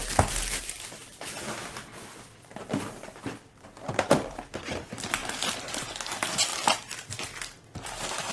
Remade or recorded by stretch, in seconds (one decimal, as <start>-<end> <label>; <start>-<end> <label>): 0.0-0.5 recorded; 0.5-5.2 remade; 5.2-5.8 recorded; 5.8-6.5 remade; 6.5-8.3 recorded